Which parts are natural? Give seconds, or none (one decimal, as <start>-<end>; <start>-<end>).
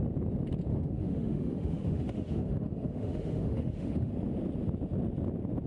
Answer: 0.0-0.7; 4.1-5.7